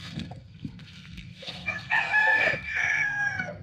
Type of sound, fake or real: fake